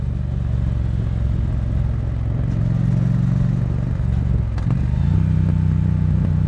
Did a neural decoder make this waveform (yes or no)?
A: no